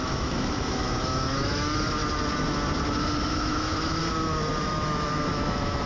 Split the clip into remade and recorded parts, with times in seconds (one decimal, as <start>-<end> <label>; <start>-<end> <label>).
0.0-2.0 remade; 2.0-3.3 recorded; 3.3-4.0 remade; 4.0-4.6 recorded; 4.6-5.9 remade